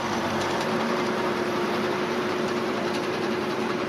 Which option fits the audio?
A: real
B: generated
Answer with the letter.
B